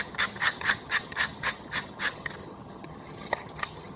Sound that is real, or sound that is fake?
fake